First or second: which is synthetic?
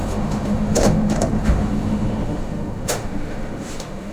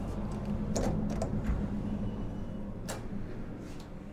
first